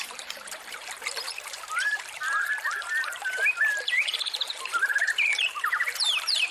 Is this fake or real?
fake